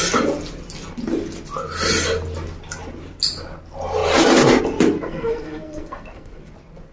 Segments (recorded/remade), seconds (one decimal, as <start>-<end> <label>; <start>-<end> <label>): 0.0-5.1 recorded; 5.1-6.5 remade; 6.5-6.9 recorded